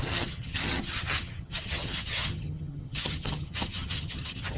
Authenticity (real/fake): fake